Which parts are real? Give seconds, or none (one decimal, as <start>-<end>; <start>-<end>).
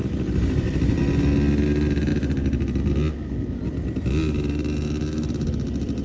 0.0-6.0